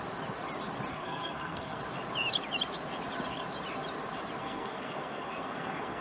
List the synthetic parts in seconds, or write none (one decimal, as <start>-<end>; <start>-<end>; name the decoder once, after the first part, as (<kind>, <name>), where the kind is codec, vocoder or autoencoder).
0.9-1.8 (codec, SNAC); 4.4-6.0